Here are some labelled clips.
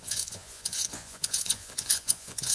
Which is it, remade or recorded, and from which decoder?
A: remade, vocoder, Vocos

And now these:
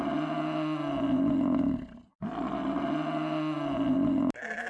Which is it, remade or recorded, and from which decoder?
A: recorded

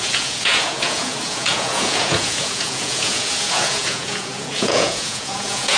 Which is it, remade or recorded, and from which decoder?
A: remade, vocoder, Vocos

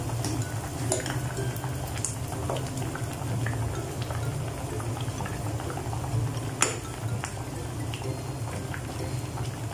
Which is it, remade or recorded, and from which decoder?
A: recorded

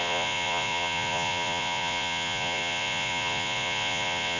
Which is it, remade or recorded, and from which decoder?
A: remade, vocoder, Vocos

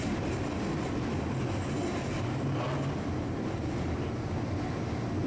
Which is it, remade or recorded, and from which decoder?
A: recorded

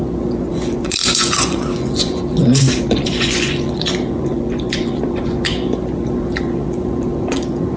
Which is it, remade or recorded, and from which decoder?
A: remade, vocoder, Vocos